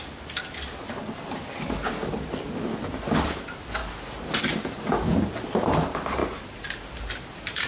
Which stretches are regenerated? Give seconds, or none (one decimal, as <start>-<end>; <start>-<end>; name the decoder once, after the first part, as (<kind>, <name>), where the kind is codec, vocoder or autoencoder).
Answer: none